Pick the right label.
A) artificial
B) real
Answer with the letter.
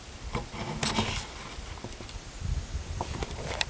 B